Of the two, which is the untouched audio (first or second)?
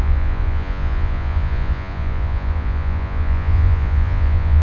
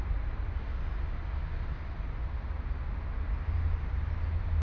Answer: second